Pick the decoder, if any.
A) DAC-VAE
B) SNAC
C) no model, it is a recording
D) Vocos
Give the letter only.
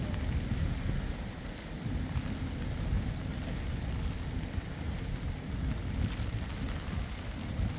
C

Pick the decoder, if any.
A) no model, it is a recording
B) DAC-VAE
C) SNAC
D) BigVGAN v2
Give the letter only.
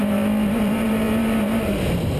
D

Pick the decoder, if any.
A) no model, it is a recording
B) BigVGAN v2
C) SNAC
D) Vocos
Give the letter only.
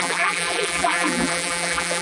B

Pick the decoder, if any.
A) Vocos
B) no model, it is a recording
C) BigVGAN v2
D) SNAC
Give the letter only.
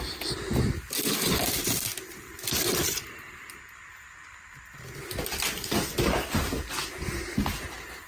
B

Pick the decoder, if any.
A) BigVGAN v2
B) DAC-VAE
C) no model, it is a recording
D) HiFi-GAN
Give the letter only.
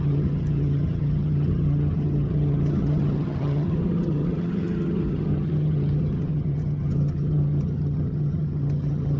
D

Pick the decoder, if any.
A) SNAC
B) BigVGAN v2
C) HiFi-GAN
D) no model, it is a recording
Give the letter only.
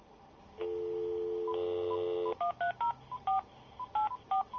D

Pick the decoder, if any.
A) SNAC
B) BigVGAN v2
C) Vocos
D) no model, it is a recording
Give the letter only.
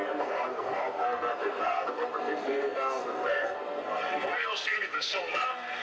A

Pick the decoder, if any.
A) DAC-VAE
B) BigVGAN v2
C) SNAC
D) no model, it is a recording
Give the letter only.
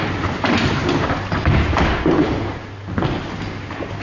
D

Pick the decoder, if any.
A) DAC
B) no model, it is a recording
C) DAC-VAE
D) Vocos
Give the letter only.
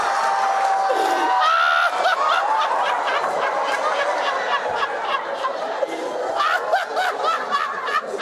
B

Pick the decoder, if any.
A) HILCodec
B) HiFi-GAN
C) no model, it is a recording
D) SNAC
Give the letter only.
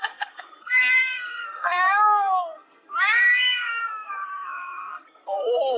D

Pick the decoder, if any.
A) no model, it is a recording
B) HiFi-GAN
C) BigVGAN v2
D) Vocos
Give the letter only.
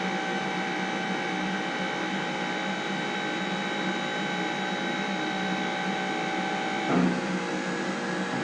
A